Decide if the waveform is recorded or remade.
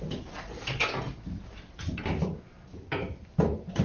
recorded